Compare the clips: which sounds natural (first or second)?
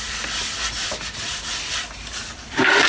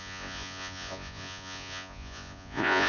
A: first